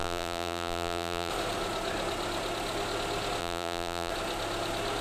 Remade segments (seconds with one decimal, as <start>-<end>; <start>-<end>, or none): 0.0-1.3; 3.4-4.1